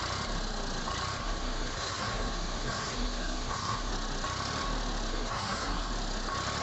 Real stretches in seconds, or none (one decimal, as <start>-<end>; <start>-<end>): 0.0-1.2; 3.9-5.1; 5.9-6.6